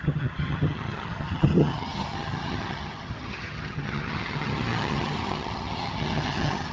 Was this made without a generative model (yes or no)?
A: no